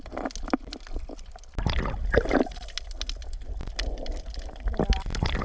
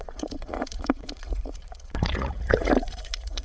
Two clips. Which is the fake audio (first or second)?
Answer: second